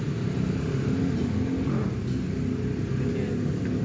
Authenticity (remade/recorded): recorded